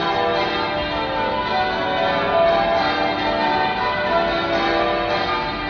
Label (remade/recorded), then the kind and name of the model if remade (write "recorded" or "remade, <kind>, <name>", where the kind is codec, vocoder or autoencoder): recorded